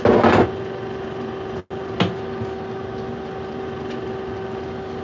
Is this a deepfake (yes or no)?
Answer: no